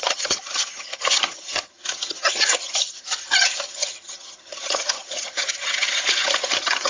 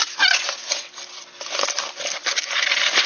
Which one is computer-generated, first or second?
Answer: first